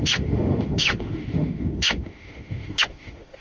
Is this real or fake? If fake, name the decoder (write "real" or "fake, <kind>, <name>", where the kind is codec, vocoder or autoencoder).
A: fake, autoencoder, DAC-VAE